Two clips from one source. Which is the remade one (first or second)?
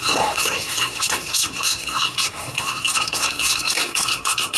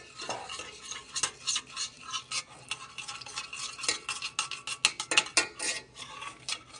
first